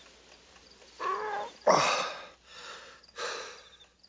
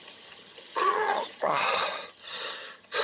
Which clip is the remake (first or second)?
second